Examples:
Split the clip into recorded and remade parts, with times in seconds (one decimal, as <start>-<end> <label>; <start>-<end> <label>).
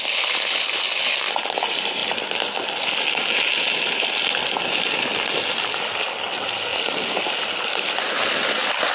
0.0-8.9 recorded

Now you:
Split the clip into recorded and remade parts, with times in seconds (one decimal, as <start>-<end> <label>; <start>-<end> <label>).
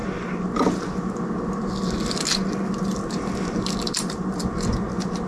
0.0-5.3 recorded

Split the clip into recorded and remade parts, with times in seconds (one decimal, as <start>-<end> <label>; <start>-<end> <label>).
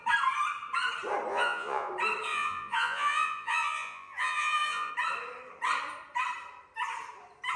0.0-1.3 recorded; 1.3-1.9 remade; 1.9-2.3 recorded; 2.3-4.9 remade; 4.9-7.6 recorded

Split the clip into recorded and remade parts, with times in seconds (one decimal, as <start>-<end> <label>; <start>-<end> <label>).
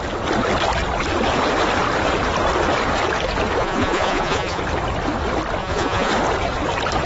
0.0-3.6 recorded; 3.6-4.6 remade; 4.6-5.6 recorded; 5.6-6.1 remade; 6.1-7.1 recorded